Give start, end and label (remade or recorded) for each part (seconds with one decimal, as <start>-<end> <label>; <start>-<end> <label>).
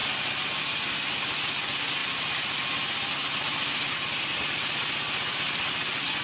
0.0-6.2 recorded